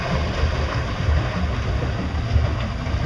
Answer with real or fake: real